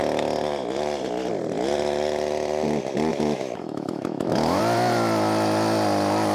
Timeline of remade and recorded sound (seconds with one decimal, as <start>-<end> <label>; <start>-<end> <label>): 0.0-3.1 recorded; 3.1-4.6 remade; 4.6-6.3 recorded